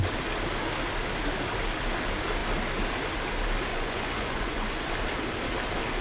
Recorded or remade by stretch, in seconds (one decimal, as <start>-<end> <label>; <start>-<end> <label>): 0.0-3.7 recorded; 3.7-4.9 remade; 4.9-6.0 recorded